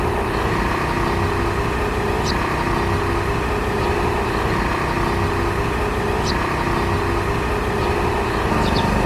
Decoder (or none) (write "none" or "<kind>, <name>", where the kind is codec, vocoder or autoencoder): none